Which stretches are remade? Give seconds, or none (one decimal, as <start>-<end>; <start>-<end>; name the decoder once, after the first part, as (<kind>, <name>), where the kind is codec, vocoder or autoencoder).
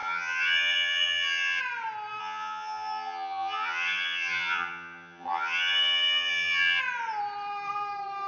0.0-1.6 (vocoder, HiFi-GAN); 2.2-6.8